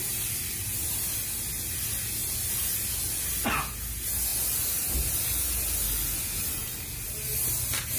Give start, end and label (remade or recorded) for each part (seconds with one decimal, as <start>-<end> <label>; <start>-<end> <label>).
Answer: 0.0-8.0 recorded